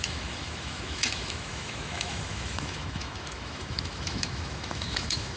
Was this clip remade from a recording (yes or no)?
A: yes